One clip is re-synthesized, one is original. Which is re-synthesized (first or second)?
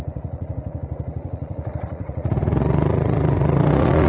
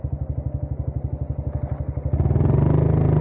first